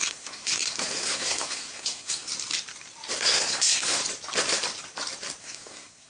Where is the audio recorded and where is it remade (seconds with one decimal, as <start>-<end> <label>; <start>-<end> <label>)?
0.0-2.3 remade; 2.3-3.2 recorded; 3.2-4.0 remade; 4.0-5.4 recorded; 5.4-6.1 remade